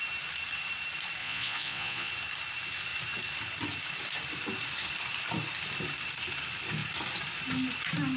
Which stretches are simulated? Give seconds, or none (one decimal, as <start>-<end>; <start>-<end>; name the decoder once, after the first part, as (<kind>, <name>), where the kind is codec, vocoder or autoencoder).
1.2-2.1 (vocoder, Vocos)